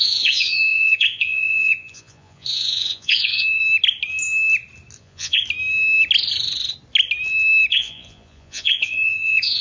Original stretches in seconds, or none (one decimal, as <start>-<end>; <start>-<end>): 3.6-5.0; 5.4-7.7